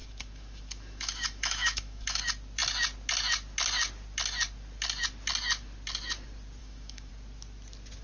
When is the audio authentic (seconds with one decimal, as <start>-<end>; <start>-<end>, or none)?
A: 2.2-6.6; 7.1-8.0